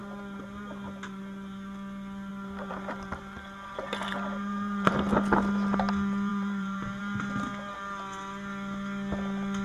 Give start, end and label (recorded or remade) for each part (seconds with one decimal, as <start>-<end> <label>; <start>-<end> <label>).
0.0-2.3 recorded; 2.3-4.9 remade; 4.9-6.3 recorded; 6.3-7.0 remade; 7.0-9.6 recorded